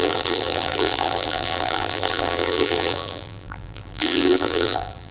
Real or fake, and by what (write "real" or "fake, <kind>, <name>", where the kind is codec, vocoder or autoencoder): fake, vocoder, BigVGAN v2